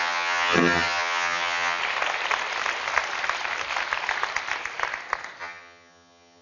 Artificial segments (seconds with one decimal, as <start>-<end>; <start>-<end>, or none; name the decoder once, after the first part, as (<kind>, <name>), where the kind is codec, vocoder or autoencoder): 0.0-1.8 (vocoder, HiFi-GAN); 5.4-6.4